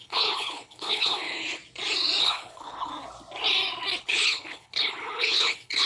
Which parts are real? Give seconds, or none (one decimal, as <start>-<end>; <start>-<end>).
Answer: 1.6-2.2; 2.9-4.0